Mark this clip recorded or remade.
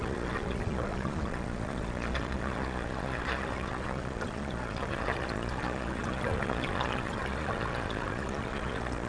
remade